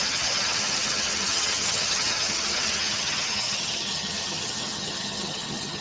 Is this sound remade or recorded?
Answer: remade